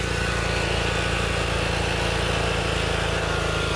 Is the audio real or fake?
real